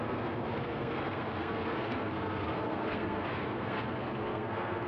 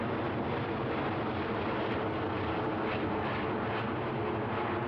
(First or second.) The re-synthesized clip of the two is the first